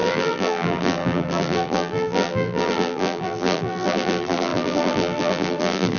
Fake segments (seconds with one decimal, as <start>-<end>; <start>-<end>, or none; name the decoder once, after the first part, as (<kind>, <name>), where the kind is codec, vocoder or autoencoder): 0.0-6.0 (vocoder, BigVGAN v2)